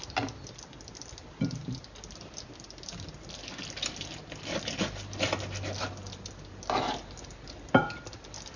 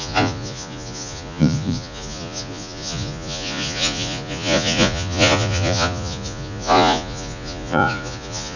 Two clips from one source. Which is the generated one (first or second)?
second